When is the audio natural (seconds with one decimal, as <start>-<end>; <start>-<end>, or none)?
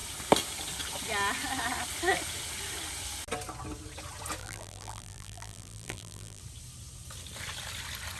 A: 0.0-4.4; 6.4-8.2